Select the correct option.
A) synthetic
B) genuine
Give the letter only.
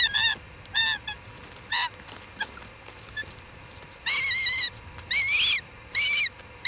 B